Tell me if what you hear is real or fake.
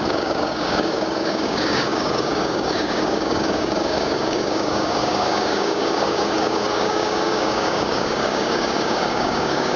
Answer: fake